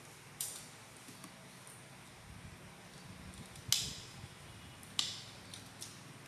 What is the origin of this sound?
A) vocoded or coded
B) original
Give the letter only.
B